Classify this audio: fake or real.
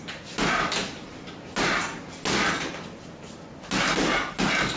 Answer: real